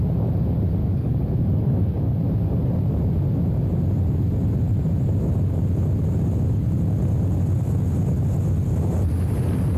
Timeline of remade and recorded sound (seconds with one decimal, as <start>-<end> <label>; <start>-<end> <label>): 0.0-0.8 recorded; 0.8-2.2 remade; 2.2-9.8 recorded